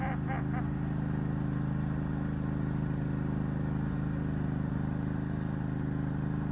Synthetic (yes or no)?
no